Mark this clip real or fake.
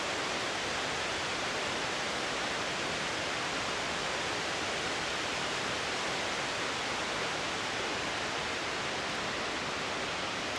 real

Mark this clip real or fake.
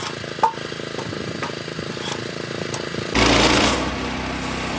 real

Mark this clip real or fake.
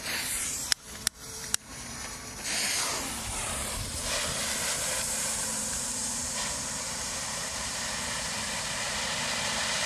fake